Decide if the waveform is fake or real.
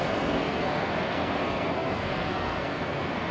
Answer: fake